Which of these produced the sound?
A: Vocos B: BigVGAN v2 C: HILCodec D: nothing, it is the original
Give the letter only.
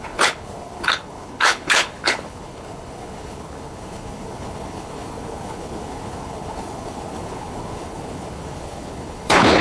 C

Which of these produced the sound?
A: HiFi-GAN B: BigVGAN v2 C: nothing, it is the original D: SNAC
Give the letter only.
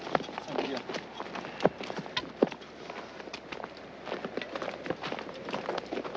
C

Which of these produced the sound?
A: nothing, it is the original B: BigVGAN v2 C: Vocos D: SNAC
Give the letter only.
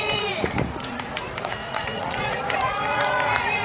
C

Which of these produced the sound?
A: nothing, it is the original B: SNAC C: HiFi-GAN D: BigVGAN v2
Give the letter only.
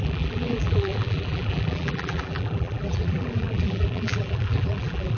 D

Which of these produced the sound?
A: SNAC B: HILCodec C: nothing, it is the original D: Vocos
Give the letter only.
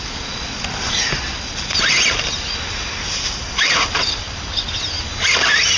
C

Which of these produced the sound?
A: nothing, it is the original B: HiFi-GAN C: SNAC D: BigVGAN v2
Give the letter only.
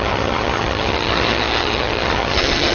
B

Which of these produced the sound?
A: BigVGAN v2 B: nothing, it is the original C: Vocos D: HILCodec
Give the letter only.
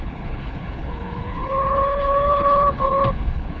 D